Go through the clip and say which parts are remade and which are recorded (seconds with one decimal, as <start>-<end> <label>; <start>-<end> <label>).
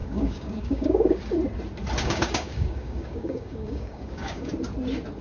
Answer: 0.0-1.2 remade; 1.2-2.0 recorded; 2.0-4.5 remade; 4.5-5.2 recorded